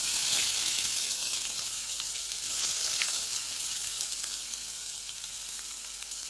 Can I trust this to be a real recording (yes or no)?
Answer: no